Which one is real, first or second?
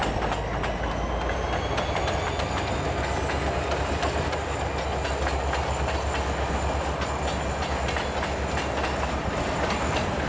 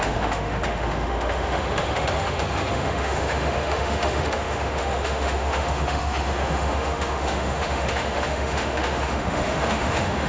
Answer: first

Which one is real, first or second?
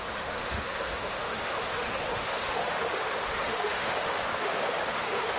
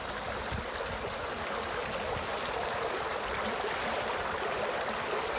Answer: second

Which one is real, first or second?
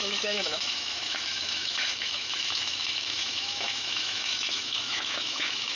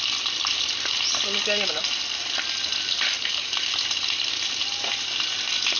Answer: second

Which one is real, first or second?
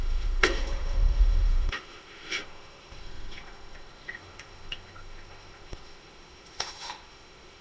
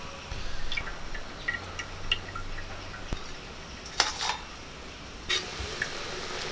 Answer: second